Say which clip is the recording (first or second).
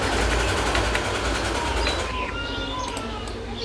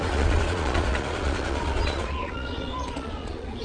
first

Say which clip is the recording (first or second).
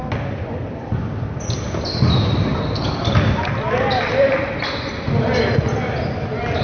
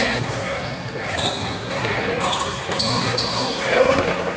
first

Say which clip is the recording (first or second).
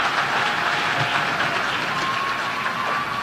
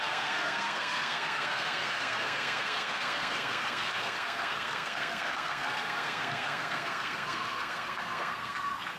first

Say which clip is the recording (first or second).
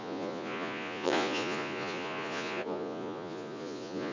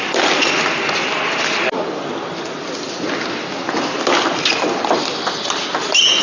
second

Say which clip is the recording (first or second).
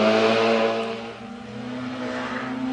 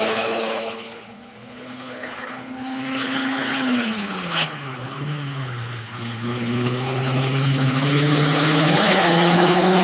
first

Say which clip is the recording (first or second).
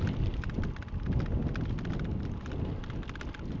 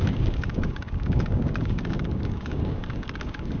first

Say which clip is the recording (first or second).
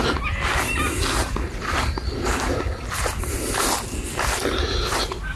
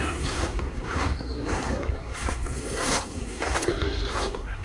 first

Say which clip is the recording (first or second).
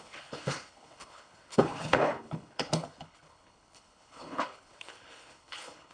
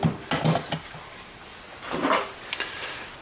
second